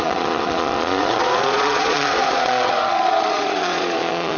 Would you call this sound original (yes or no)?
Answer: no